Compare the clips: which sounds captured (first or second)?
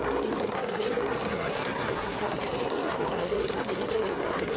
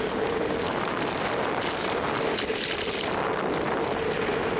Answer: second